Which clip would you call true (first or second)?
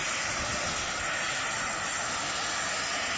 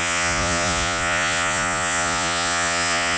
first